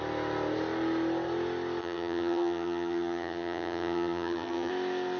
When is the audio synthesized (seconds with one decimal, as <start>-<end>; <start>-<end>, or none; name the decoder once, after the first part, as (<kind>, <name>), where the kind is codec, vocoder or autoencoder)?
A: 1.8-4.7 (vocoder, HiFi-GAN)